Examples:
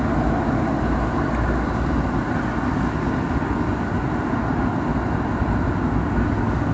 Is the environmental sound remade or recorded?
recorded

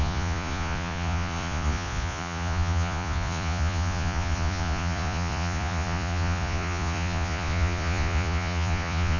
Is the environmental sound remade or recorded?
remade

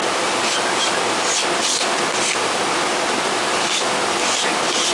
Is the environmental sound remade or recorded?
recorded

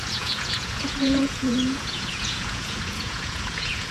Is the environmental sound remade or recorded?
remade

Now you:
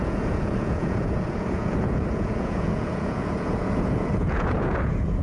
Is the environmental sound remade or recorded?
remade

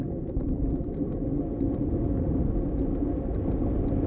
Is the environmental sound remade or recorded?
recorded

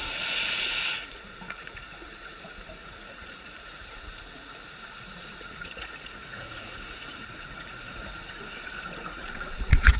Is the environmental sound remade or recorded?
remade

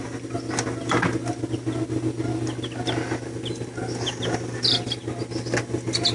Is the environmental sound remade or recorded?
recorded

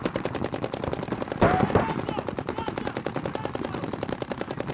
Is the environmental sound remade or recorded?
recorded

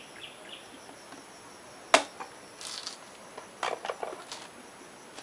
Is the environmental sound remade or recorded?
recorded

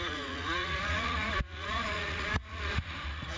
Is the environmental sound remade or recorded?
remade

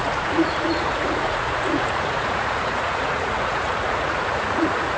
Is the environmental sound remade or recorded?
remade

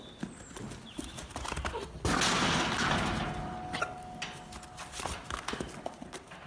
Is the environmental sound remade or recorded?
recorded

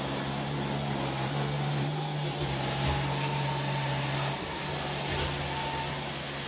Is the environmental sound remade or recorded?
recorded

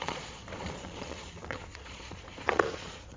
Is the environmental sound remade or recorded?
remade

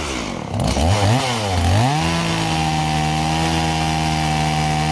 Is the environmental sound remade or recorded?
recorded